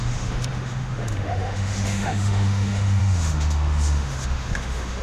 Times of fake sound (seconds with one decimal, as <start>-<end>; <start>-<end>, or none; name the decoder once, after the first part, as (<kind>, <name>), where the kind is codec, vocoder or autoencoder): 0.0-5.0 (autoencoder, DAC-VAE)